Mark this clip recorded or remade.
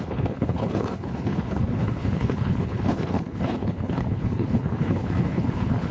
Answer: remade